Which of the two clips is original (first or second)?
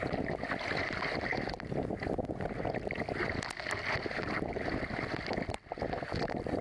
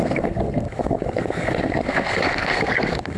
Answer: first